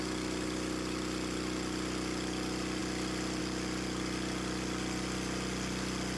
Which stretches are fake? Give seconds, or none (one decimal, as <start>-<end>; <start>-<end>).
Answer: none